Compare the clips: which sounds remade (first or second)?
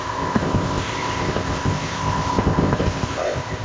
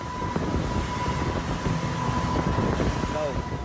first